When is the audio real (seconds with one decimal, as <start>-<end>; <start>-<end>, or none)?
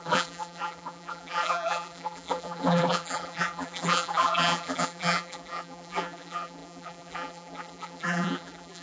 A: none